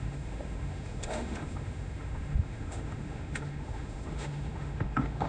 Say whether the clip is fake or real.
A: fake